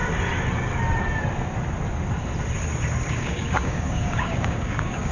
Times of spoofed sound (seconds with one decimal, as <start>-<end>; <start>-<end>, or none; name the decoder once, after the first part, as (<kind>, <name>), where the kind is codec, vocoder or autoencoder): 3.1-5.1 (codec, DAC)